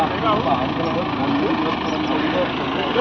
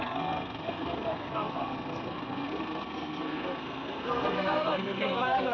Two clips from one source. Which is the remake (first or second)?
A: second